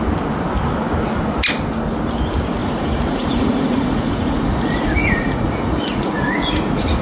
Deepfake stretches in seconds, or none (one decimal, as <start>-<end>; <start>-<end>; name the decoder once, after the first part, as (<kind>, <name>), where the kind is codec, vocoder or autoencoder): 2.6-7.0 (vocoder, Vocos)